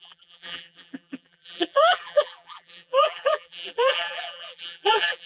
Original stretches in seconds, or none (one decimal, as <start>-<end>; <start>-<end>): none